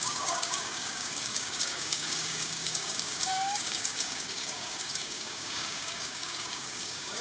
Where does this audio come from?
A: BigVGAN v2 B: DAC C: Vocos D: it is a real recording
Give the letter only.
B